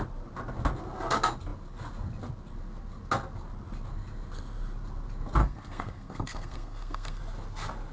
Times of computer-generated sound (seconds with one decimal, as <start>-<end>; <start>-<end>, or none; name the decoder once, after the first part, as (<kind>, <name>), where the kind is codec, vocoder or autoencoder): 5.4-7.2 (codec, SNAC)